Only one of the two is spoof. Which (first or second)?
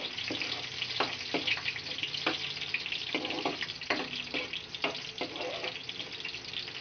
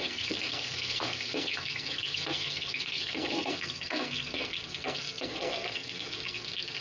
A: second